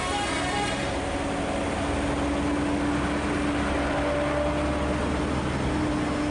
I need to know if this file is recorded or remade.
recorded